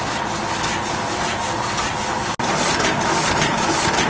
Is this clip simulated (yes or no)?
no